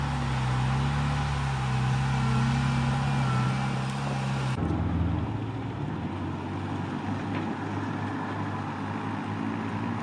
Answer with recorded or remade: recorded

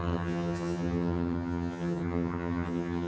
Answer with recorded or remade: remade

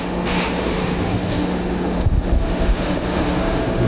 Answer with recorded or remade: remade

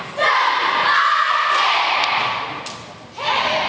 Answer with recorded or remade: recorded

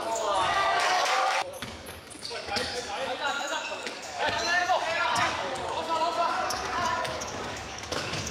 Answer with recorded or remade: remade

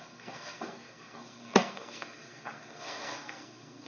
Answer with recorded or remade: remade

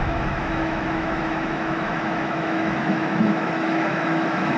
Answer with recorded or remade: remade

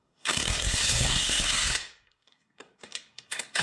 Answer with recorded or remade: remade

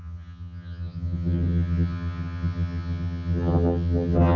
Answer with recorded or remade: remade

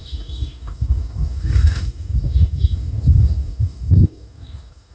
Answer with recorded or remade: remade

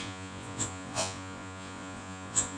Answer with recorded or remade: remade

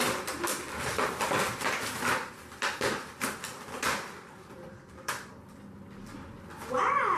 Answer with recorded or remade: remade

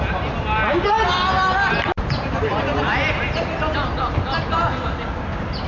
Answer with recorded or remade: recorded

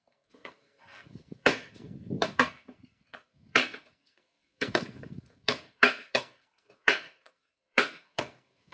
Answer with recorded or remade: remade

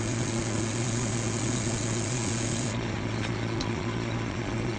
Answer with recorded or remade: remade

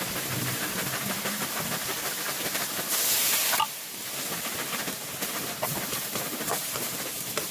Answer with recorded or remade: remade